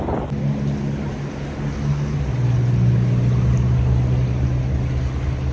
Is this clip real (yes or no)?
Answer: yes